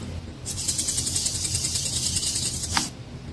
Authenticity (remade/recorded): recorded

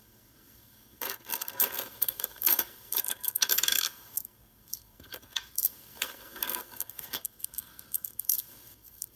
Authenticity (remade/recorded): remade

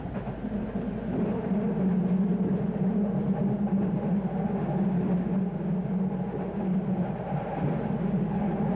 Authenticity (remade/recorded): recorded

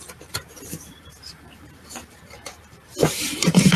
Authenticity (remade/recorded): remade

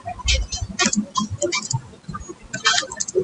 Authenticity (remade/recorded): recorded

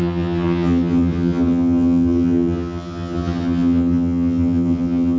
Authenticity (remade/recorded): remade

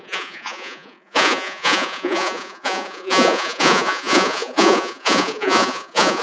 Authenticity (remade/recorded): remade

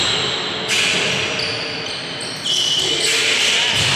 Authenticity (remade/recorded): recorded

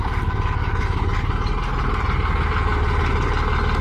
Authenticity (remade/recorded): recorded